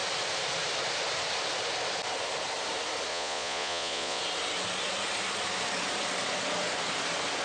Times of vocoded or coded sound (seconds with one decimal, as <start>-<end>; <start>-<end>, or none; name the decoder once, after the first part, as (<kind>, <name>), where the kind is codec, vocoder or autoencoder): 3.1-4.2 (vocoder, Vocos)